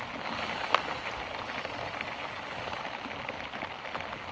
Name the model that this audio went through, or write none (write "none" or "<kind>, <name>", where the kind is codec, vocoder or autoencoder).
none